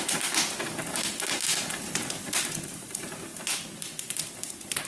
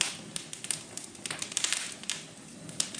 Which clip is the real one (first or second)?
second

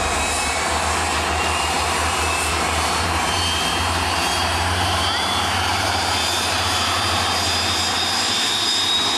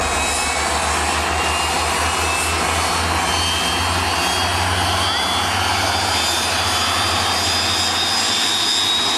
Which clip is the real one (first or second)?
second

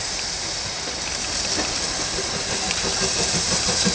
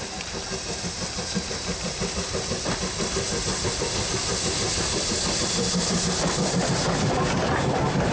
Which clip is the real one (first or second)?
second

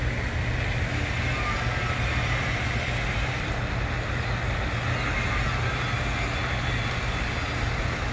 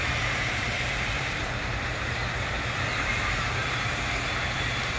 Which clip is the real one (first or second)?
first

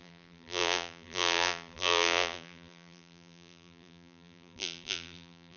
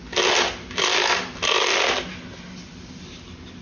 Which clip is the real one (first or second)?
second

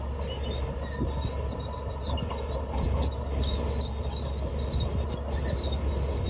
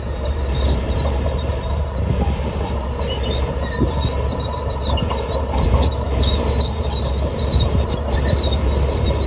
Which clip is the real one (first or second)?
first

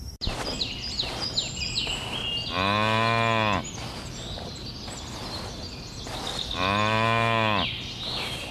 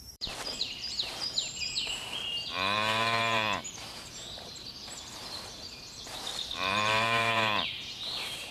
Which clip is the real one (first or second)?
first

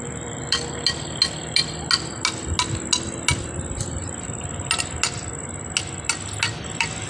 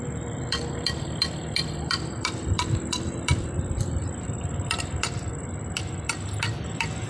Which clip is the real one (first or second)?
first